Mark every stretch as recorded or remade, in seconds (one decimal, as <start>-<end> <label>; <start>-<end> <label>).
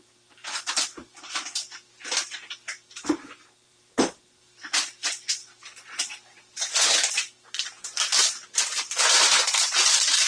0.0-10.3 remade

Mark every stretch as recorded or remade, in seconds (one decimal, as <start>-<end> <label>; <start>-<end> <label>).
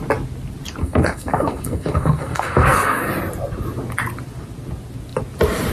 0.0-0.8 recorded; 0.8-3.1 remade; 3.1-5.7 recorded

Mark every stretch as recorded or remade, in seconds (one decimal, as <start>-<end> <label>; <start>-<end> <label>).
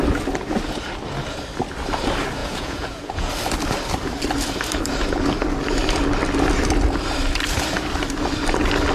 0.0-2.4 recorded; 2.4-3.3 remade; 3.3-8.9 recorded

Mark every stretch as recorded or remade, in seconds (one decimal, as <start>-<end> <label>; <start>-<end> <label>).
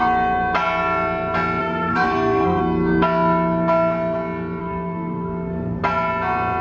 0.0-1.6 recorded; 1.6-2.6 remade; 2.6-4.6 recorded; 4.6-5.8 remade; 5.8-6.6 recorded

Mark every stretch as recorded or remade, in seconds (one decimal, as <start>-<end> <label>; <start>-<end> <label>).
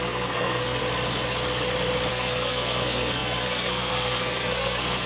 0.0-0.8 remade; 0.8-2.1 recorded; 2.1-5.1 remade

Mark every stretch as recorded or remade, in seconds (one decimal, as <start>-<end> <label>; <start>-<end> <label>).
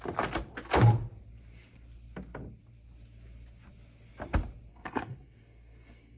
0.0-4.7 recorded; 4.7-6.2 remade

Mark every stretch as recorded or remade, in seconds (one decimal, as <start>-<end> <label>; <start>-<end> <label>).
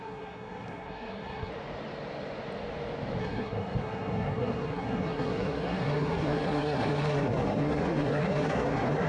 0.0-1.5 remade; 1.5-3.2 recorded; 3.2-9.1 remade